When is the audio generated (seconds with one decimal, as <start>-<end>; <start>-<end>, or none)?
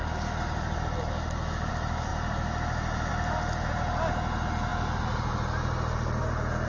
none